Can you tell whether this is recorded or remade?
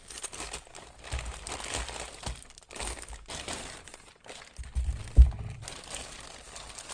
recorded